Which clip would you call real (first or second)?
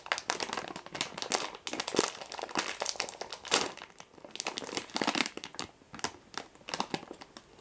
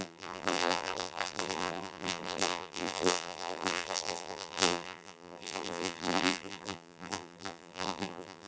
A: first